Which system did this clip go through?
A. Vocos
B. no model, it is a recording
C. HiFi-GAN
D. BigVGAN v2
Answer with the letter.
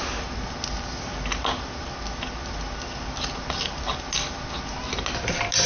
B